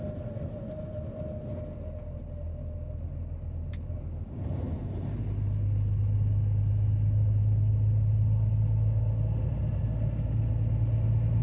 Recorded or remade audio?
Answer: recorded